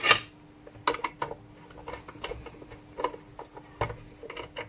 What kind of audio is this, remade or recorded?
recorded